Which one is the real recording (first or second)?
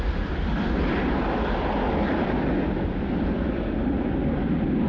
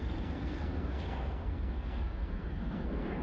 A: first